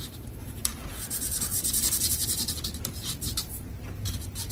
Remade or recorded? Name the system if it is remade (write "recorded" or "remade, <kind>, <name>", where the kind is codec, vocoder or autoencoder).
remade, vocoder, BigVGAN v2